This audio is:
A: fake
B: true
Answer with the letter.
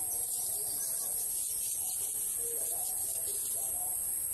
B